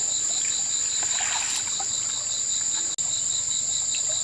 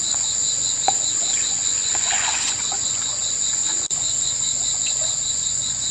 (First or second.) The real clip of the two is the first